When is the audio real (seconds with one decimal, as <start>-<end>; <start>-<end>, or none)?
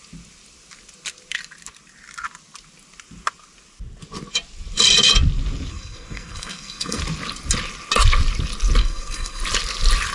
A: 0.0-5.7; 7.0-8.8; 9.4-10.1